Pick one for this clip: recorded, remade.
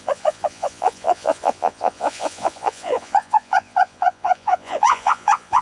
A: remade